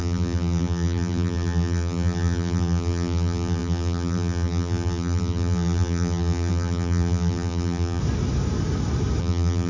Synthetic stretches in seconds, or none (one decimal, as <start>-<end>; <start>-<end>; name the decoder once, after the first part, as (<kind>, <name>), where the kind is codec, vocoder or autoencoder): 0.0-8.0 (vocoder, BigVGAN v2); 9.2-9.7

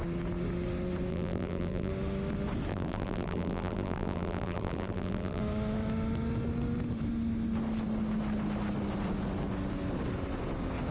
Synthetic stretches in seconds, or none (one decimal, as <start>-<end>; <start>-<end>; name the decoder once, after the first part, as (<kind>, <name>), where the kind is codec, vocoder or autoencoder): 1.1-1.9 (vocoder, BigVGAN v2); 2.7-5.4

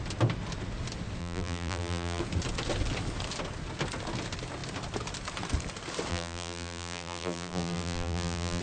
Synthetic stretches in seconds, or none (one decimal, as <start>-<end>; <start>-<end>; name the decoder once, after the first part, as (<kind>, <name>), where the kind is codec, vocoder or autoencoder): 1.2-2.2 (vocoder, BigVGAN v2); 6.1-8.6

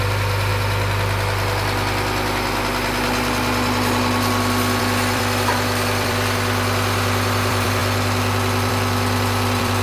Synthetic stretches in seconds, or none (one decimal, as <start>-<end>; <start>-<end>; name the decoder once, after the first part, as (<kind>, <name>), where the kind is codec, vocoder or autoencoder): 0.0-0.5 (vocoder, BigVGAN v2); 4.8-7.8; 8.7-9.8

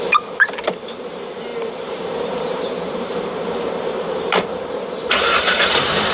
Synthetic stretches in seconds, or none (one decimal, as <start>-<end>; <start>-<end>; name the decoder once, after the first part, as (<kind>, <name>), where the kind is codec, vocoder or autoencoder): 0.0-6.1 (vocoder, BigVGAN v2)

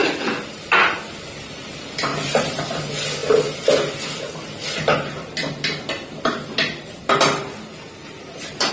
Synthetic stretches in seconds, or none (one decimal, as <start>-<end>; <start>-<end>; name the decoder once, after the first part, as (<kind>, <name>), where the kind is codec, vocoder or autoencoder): 2.1-2.6 (vocoder, BigVGAN v2); 8.0-8.7